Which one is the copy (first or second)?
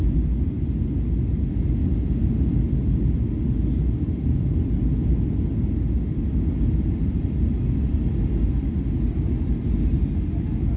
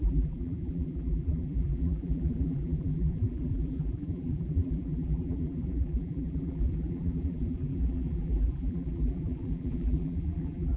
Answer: second